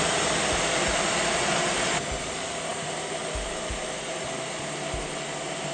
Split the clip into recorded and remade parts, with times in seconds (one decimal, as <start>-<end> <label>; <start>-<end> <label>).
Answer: 0.0-5.7 recorded